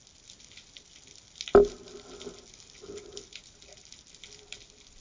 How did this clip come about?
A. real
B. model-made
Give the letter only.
A